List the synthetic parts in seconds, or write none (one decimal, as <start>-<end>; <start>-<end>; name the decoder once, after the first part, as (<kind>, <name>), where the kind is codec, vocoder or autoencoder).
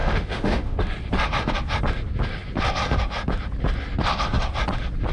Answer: 0.0-0.8 (autoencoder, DAC-VAE)